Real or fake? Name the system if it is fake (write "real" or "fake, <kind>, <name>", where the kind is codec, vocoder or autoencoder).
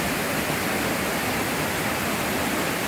real